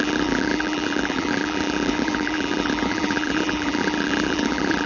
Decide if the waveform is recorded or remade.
remade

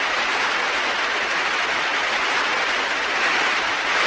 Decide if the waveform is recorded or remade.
recorded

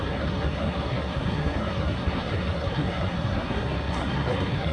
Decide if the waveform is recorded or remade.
remade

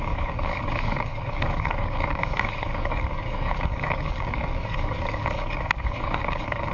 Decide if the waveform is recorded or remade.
remade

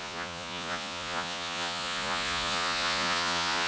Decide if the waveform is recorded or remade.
remade